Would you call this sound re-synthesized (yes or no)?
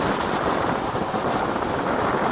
yes